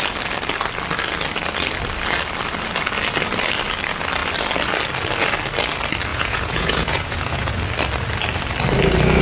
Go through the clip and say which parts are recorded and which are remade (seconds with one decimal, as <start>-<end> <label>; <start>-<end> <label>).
0.0-6.1 recorded; 6.1-7.5 remade; 7.5-9.2 recorded